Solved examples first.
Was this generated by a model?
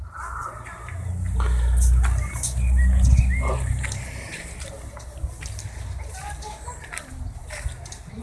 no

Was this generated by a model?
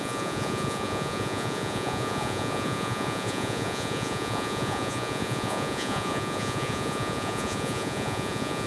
yes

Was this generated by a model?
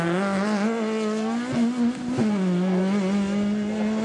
no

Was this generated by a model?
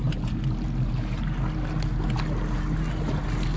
no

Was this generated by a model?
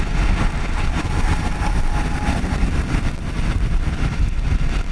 no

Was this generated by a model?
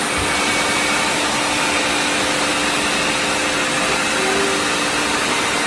no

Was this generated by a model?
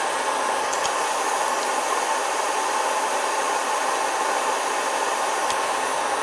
no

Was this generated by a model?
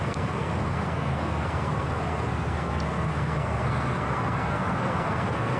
yes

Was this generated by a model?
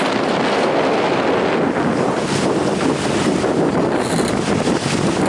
no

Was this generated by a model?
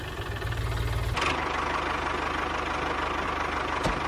no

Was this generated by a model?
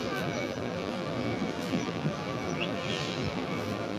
yes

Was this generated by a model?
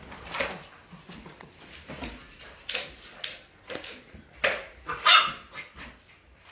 no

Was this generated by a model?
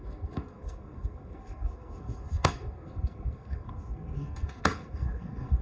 yes